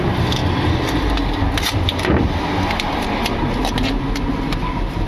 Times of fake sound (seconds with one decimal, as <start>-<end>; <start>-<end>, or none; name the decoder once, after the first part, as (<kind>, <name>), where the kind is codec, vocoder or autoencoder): none